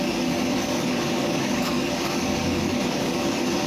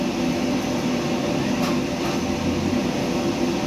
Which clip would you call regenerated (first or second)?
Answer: first